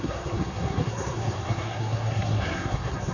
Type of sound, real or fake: fake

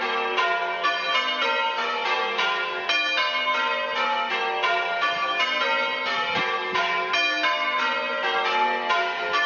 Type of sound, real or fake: real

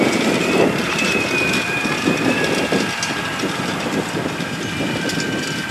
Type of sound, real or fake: fake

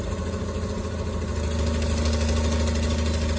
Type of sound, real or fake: real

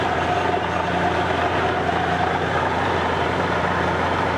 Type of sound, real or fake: fake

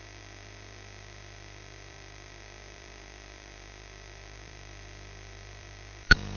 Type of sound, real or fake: fake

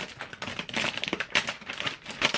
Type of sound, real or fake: real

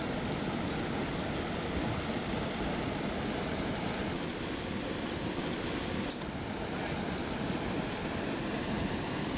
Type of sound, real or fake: real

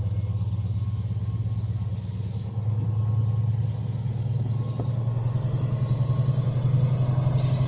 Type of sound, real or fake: real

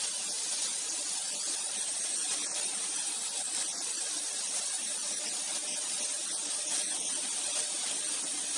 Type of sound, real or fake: real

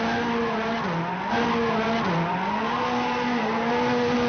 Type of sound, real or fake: real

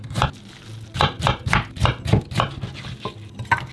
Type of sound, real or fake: real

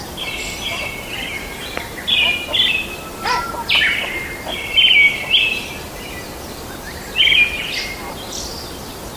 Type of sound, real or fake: real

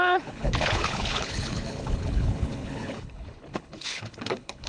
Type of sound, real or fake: fake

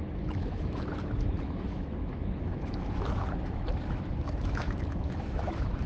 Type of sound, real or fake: fake